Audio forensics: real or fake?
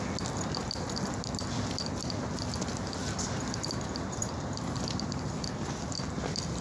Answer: real